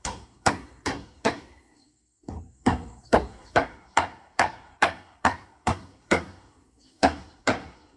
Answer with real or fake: fake